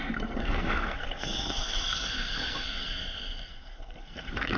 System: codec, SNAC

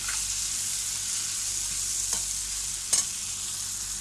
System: none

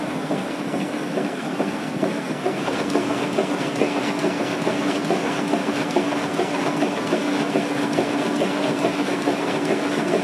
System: codec, SNAC